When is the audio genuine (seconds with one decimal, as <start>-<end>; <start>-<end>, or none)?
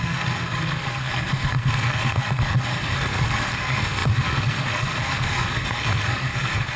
none